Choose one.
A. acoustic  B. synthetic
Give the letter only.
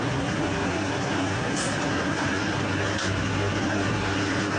B